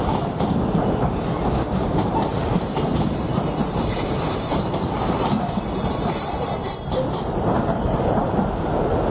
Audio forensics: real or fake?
fake